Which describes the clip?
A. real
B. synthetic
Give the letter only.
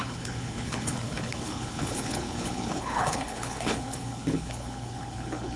B